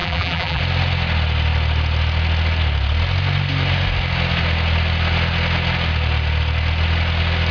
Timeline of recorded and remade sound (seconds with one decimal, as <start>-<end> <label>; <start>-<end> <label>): 0.0-0.6 remade; 0.6-7.5 recorded

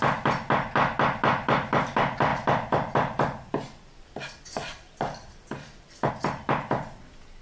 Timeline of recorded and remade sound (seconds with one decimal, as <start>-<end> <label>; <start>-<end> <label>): 0.0-7.4 remade

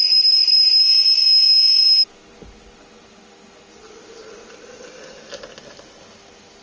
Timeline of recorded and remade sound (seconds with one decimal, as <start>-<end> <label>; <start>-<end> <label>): 0.0-6.6 recorded

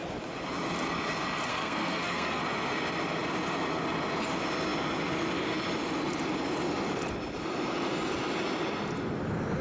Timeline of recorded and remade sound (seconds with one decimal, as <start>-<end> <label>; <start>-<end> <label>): 0.0-1.5 recorded; 1.5-2.4 remade; 2.4-9.6 recorded

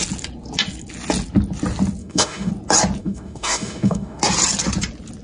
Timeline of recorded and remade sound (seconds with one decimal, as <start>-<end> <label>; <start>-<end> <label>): 0.0-2.0 recorded; 2.0-2.5 remade; 2.5-3.0 recorded; 3.0-4.2 remade; 4.2-5.2 recorded

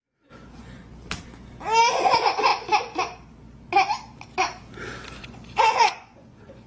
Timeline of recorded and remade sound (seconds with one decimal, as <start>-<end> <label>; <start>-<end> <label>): 0.0-0.9 remade; 0.9-2.1 recorded; 2.1-2.5 remade; 2.5-5.2 recorded; 5.2-6.7 remade

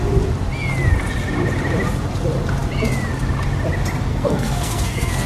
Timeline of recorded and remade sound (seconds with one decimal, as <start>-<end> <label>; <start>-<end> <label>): 0.0-4.1 recorded; 4.1-5.3 remade

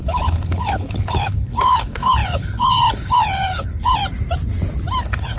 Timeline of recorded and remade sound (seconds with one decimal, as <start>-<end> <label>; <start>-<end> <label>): 0.0-4.0 remade; 4.0-5.0 recorded; 5.0-5.4 remade